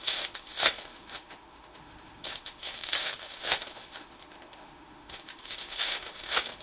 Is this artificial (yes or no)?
yes